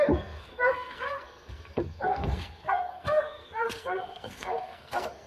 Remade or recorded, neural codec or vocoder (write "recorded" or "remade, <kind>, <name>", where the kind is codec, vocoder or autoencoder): remade, codec, SNAC